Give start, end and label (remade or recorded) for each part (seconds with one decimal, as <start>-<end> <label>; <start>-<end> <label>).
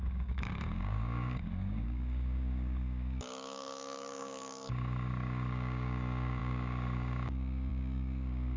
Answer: 0.0-8.6 remade